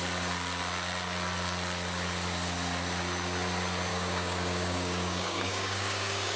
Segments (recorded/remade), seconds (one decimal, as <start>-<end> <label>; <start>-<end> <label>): 0.0-3.9 recorded; 3.9-6.4 remade